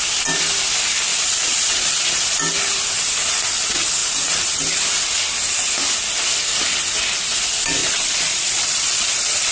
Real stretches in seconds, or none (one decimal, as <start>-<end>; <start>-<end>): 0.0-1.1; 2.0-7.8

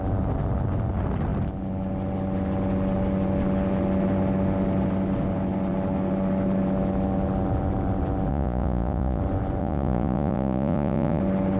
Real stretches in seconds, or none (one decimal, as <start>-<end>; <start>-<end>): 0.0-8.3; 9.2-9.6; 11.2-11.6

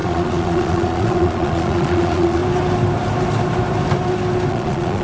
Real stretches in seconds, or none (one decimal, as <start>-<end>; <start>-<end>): 2.4-4.5